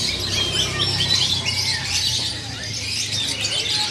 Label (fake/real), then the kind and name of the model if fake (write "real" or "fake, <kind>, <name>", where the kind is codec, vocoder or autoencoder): real